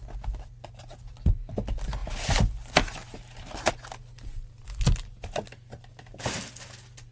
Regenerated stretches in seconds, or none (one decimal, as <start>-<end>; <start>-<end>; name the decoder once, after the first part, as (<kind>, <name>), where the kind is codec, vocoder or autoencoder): none